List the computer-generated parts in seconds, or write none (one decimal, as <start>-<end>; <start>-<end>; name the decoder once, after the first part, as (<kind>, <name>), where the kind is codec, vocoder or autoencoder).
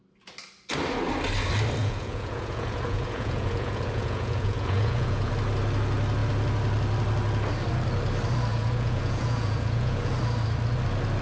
1.8-5.3 (vocoder, Vocos); 8.5-10.1